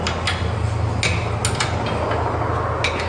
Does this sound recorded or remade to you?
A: recorded